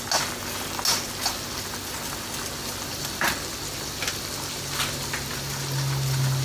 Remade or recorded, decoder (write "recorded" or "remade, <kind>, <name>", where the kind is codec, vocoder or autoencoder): recorded